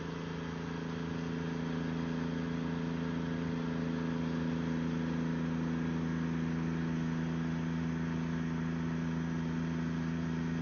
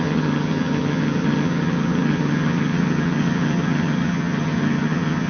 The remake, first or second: second